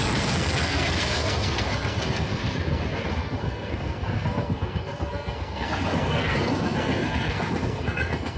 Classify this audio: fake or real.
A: fake